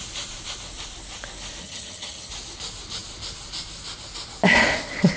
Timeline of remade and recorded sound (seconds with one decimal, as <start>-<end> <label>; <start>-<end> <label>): 0.0-1.6 recorded; 1.6-2.3 remade; 2.3-5.2 recorded